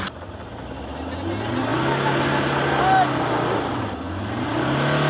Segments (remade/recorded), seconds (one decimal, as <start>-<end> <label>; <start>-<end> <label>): 0.0-5.1 recorded